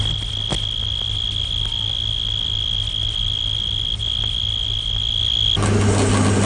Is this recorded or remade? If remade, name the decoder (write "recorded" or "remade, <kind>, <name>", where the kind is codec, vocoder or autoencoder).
recorded